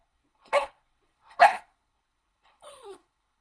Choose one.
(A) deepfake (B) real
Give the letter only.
A